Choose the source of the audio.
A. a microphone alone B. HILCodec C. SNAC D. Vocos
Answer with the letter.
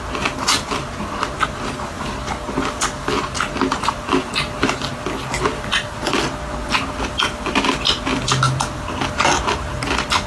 A